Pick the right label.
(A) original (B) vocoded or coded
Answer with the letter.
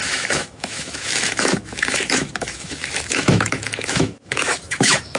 B